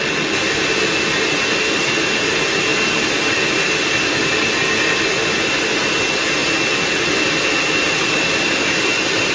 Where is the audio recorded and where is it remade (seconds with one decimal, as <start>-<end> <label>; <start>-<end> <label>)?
0.0-9.3 recorded